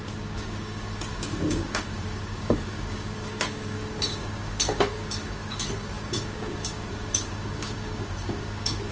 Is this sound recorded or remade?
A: remade